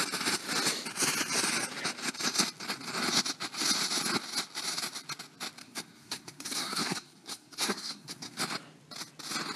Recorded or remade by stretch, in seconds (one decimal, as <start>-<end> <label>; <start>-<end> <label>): 0.0-5.6 recorded; 5.6-8.4 remade; 8.4-9.6 recorded